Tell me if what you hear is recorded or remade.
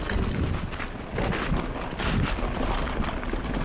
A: recorded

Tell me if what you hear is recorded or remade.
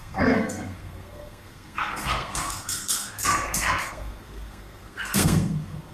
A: remade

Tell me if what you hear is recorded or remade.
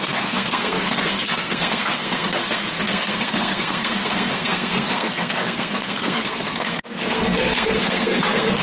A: remade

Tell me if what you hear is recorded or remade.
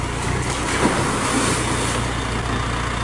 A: recorded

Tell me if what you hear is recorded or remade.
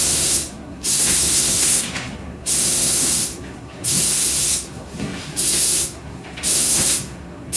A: remade